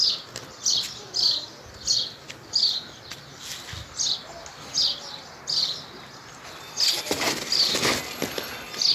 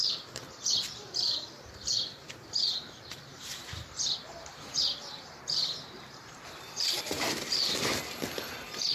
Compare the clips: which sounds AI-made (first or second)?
second